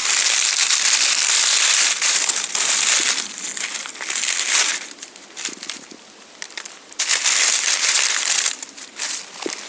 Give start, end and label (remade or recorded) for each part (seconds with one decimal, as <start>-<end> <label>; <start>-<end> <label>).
0.0-2.0 remade; 2.0-4.7 recorded; 4.7-9.2 remade; 9.2-9.7 recorded